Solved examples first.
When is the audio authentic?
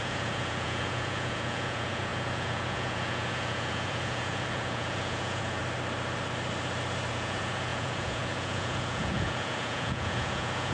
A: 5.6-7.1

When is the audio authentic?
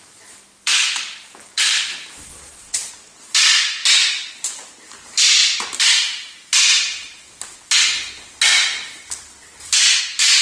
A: 0.0-2.3; 2.9-10.4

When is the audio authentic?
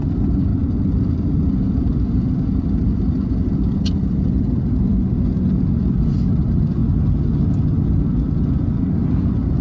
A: 0.5-1.5; 4.9-5.8; 6.8-9.2